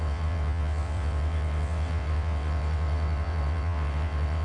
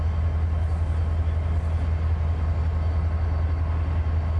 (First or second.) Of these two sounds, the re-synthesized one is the first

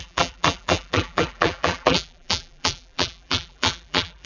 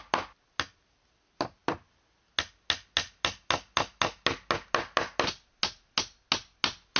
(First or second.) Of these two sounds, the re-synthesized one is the first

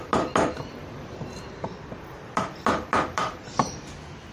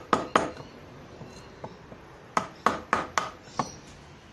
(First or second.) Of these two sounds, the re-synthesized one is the first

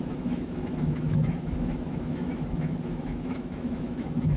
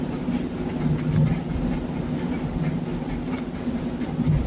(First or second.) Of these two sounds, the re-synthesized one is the first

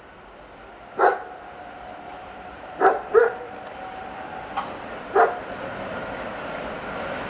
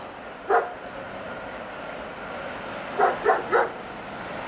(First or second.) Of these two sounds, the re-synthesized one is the first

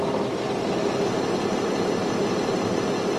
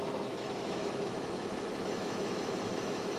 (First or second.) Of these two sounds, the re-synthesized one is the second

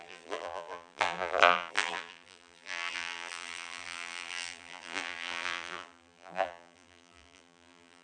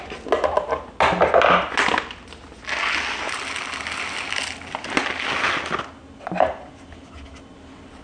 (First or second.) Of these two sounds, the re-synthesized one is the first